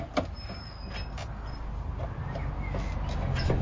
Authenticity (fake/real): real